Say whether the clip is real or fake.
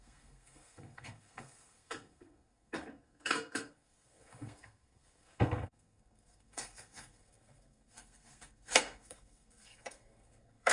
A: fake